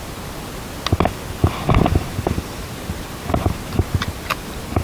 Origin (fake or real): real